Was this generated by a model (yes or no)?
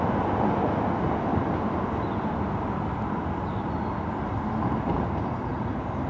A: no